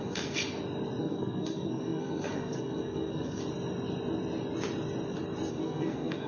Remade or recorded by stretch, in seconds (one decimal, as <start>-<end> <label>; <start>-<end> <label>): 0.0-0.4 remade; 0.4-1.0 recorded; 1.0-3.4 remade; 3.4-5.5 recorded; 5.5-6.3 remade